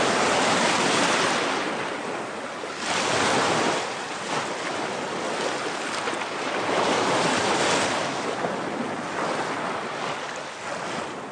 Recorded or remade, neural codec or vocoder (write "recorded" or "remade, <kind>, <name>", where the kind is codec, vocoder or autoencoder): recorded